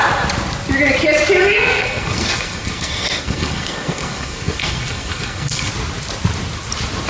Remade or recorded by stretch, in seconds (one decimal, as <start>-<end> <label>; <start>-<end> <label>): 0.0-1.4 recorded; 1.4-5.7 remade; 5.7-7.1 recorded